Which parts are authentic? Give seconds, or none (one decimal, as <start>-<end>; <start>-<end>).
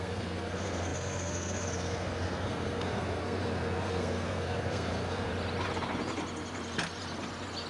5.3-7.7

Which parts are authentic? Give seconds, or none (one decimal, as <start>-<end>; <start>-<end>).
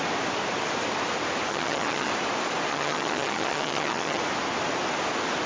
0.0-1.5; 2.1-2.7; 4.2-5.5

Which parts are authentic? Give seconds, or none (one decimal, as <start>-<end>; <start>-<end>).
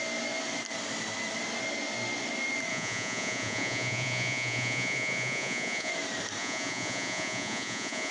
0.0-2.7; 5.9-6.4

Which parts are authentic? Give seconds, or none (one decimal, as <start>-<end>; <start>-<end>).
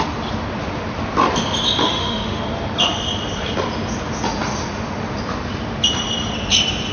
0.0-1.8; 2.4-6.9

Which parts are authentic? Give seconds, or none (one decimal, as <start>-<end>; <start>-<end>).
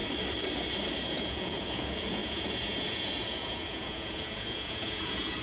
0.0-1.0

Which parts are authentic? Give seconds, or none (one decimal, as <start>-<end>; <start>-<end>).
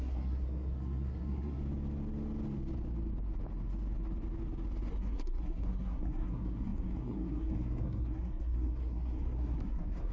1.6-4.9